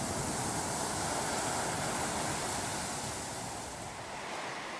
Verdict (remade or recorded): recorded